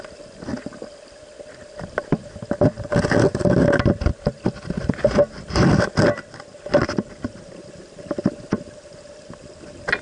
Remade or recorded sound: recorded